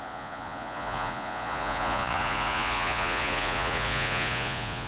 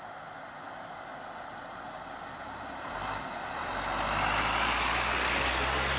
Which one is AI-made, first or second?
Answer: first